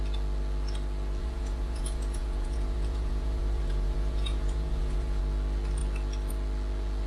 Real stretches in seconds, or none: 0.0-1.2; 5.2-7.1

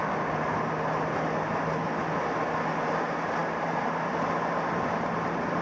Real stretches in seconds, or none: 0.0-5.6

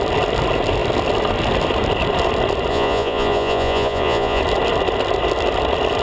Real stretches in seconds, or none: 0.0-2.7; 4.4-6.0

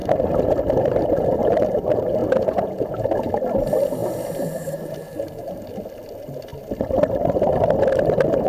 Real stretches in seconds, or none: 0.0-2.2; 3.3-8.5

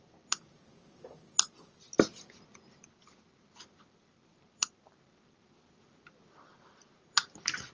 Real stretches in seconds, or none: 0.0-7.7

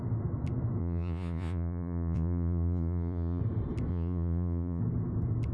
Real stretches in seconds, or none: 0.0-0.8; 3.4-3.9; 4.8-5.5